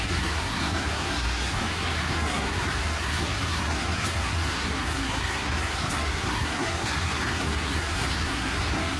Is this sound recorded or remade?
remade